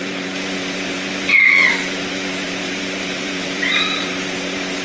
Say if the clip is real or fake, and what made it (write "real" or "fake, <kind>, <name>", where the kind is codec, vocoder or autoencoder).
fake, vocoder, BigVGAN v2